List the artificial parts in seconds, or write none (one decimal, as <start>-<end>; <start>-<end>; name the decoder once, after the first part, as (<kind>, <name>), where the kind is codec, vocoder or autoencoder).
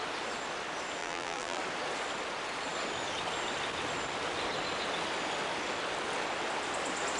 1.0-1.6 (vocoder, BigVGAN v2)